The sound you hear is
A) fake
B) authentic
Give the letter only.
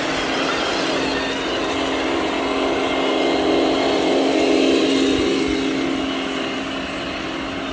B